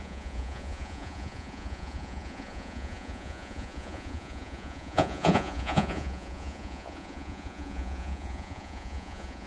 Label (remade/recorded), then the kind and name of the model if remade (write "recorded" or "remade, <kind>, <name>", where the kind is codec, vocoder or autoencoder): remade, vocoder, Vocos